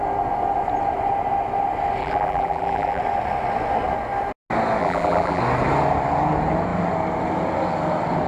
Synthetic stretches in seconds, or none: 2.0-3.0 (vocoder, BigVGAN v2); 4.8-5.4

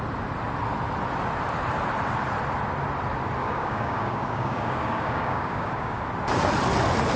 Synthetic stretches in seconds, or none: 3.4-6.0 (codec, DAC)

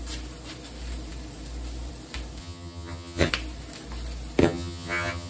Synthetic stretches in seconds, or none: 2.4-3.3 (vocoder, HiFi-GAN); 4.4-5.3